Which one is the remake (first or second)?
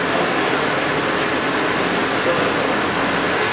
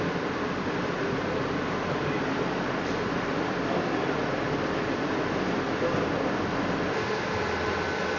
second